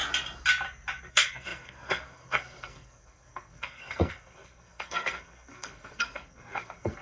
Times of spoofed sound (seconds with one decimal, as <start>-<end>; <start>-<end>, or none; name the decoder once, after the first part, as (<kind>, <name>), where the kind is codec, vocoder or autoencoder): 1.1-7.0 (codec, SNAC)